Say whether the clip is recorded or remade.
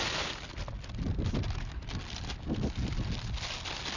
recorded